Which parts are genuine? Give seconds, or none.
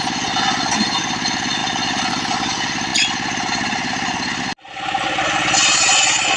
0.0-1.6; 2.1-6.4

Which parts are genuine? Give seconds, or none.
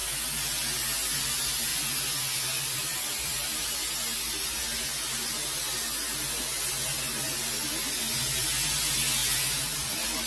0.0-10.3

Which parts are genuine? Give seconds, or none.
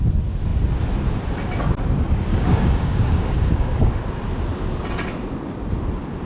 0.0-2.3; 4.0-6.3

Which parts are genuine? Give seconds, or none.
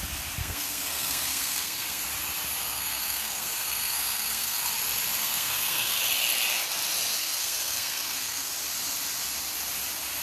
0.0-0.4; 2.0-2.6; 4.7-5.2; 6.0-7.2; 8.5-10.2